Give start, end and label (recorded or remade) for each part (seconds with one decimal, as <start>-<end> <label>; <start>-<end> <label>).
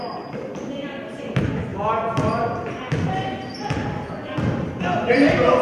0.0-5.6 recorded